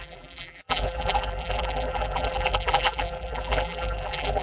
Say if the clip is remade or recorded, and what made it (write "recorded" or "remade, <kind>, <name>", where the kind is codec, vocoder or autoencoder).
remade, vocoder, BigVGAN v2